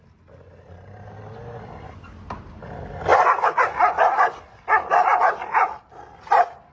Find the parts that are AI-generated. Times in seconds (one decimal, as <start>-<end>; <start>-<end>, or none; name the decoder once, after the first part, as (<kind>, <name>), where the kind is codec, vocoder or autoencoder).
none